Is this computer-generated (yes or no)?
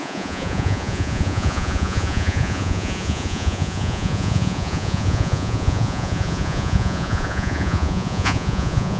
yes